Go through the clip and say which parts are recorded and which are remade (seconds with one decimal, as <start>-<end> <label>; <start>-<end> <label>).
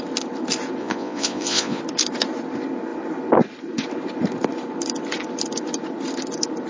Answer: 0.0-0.8 recorded; 0.8-1.8 remade; 1.8-6.7 recorded